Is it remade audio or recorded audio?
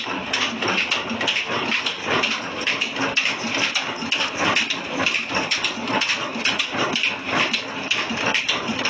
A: recorded